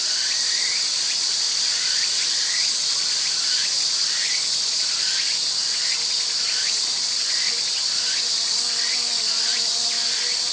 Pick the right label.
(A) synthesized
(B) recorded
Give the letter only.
B